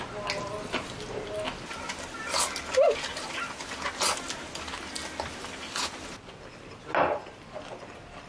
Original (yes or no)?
yes